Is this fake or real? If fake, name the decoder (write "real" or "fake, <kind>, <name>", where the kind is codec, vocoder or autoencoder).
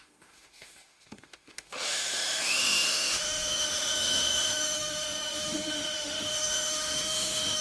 fake, autoencoder, DAC-VAE